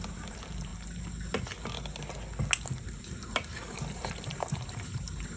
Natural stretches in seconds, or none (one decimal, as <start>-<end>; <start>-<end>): 0.7-3.8